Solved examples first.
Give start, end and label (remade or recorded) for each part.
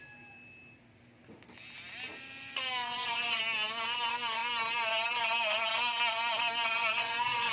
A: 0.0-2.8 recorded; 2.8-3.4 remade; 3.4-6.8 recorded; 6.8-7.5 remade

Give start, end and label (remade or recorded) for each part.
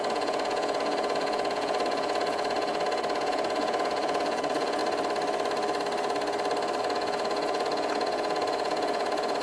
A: 0.0-4.8 remade; 4.8-6.8 recorded; 6.8-9.4 remade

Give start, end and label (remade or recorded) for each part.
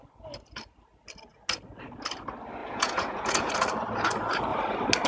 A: 0.0-2.6 recorded; 2.6-3.5 remade; 3.5-5.1 recorded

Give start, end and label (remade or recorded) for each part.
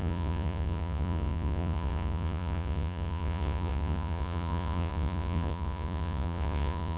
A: 0.0-7.0 remade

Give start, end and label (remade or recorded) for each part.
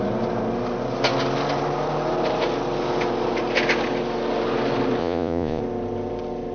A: 0.0-5.0 recorded; 5.0-5.6 remade; 5.6-6.5 recorded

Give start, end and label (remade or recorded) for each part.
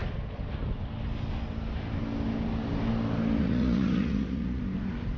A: 0.0-3.4 recorded; 3.4-4.6 remade; 4.6-5.2 recorded